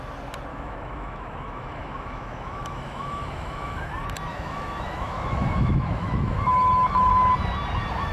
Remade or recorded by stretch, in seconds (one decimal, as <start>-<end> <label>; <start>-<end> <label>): 0.0-0.5 recorded; 0.5-3.9 remade; 3.9-4.3 recorded; 4.3-7.1 remade; 7.1-8.1 recorded